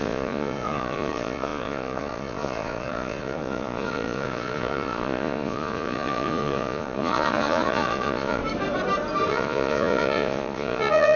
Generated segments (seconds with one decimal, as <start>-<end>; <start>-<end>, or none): 0.0-8.4; 9.3-11.2